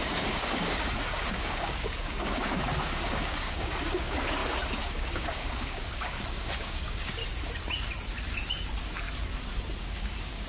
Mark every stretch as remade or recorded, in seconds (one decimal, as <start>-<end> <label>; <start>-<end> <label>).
0.0-4.4 remade; 4.4-4.9 recorded; 4.9-7.2 remade; 7.2-9.8 recorded; 9.8-10.5 remade